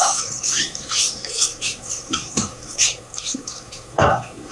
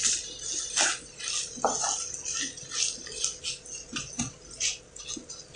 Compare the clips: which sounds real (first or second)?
second